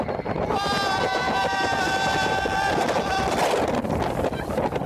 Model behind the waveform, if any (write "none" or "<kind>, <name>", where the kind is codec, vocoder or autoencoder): none